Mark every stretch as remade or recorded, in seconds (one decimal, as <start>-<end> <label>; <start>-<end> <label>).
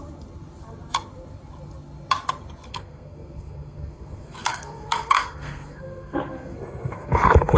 0.0-2.7 recorded; 2.7-7.6 remade